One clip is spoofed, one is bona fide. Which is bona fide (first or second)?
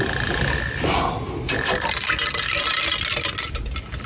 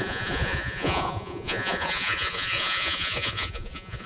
first